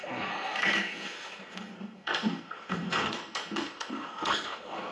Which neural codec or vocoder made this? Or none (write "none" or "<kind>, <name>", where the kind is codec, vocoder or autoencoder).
codec, SNAC